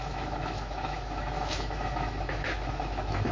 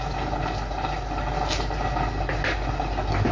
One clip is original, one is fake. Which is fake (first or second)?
first